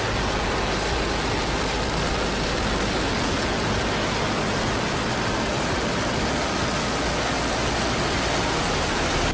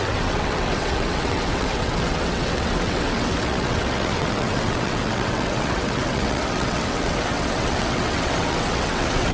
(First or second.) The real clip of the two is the first